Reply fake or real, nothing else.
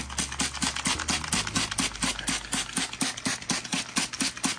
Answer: real